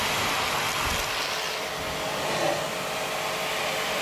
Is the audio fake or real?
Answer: real